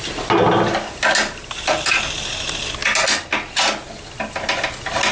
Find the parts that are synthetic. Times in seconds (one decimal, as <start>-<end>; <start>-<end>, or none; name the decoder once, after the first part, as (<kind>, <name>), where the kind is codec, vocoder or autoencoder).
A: none